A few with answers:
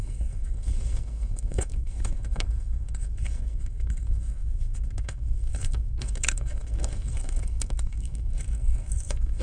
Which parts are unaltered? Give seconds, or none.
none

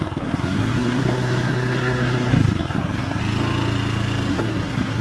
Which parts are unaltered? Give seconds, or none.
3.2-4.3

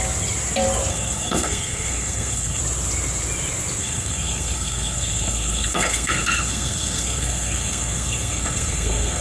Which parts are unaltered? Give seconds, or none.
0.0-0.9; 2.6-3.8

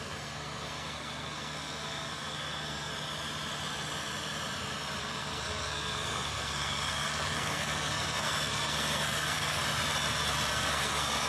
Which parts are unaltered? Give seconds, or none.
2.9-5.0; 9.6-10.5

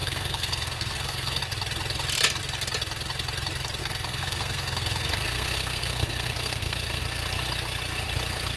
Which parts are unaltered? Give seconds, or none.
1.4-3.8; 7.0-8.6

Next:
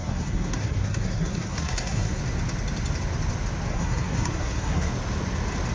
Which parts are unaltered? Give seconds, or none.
2.2-3.7; 4.9-5.7